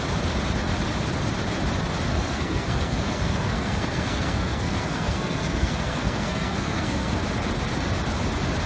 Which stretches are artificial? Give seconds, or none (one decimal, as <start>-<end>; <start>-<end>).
2.1-7.2